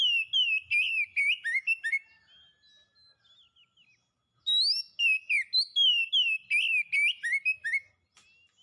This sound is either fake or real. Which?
real